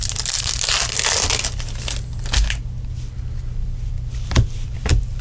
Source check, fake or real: real